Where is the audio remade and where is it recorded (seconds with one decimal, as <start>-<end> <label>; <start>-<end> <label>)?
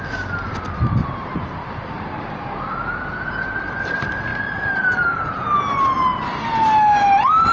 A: 0.0-4.3 recorded; 4.3-5.4 remade; 5.4-7.5 recorded